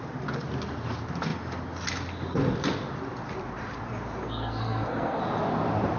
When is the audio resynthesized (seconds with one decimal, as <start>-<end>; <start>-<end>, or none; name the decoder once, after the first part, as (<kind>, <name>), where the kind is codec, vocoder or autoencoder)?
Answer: 4.2-5.2 (codec, SNAC)